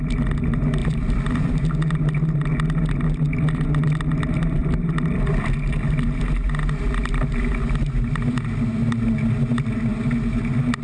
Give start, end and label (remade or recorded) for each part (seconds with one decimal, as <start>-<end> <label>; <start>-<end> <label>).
0.0-0.8 recorded; 0.8-1.6 remade; 1.6-4.6 recorded; 4.6-5.4 remade; 5.4-10.8 recorded